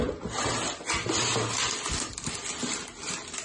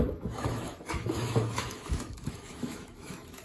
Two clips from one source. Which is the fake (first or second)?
second